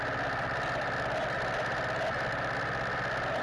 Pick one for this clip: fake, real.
real